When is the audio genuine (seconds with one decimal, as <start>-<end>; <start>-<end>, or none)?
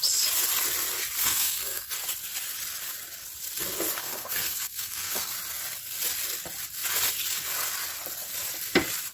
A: 0.0-1.2; 1.9-4.0; 5.3-9.1